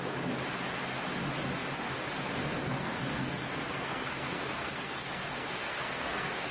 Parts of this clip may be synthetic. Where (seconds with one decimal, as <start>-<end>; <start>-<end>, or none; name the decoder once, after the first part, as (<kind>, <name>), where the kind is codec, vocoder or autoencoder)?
2.7-6.5 (codec, SNAC)